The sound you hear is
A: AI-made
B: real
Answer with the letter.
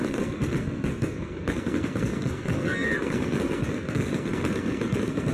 A